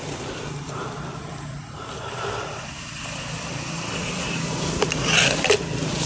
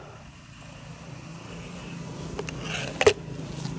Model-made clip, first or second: first